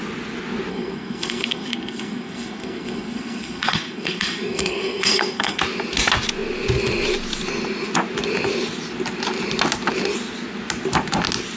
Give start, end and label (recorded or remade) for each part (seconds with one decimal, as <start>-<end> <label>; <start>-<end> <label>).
0.0-0.7 recorded; 0.7-5.6 remade; 5.6-11.6 recorded